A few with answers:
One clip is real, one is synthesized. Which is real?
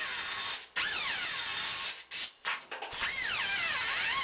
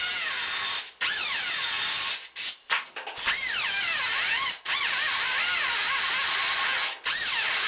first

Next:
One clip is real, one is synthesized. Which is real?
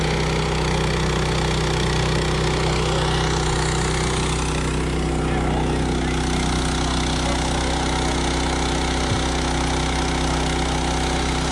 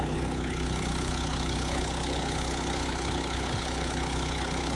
first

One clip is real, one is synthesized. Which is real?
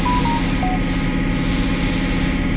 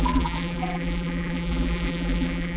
first